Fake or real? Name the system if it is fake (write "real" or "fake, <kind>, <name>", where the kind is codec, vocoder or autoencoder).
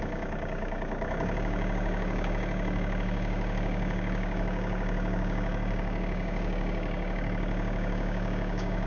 fake, codec, DAC